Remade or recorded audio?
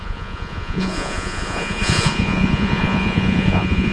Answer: remade